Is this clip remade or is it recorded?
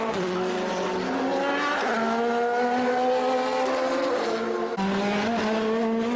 recorded